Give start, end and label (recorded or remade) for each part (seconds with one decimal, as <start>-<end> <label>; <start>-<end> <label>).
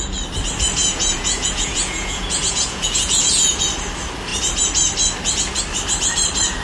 0.0-0.8 recorded; 0.8-3.6 remade; 3.6-6.6 recorded